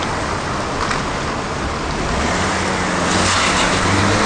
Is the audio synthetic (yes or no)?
no